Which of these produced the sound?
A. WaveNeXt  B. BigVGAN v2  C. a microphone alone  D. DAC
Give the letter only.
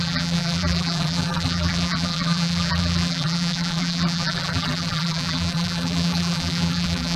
B